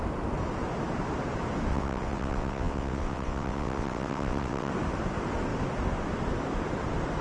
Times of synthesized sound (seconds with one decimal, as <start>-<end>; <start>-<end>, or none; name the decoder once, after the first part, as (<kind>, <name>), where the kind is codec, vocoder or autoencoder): 1.7-4.7 (vocoder, WaveNeXt)